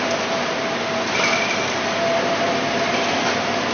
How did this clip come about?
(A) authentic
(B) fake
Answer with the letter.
B